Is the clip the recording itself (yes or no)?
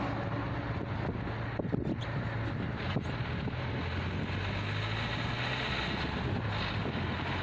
yes